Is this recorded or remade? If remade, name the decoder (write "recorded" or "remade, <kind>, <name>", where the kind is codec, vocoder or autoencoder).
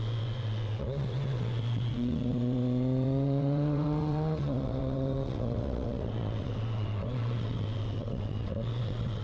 remade, vocoder, WaveNeXt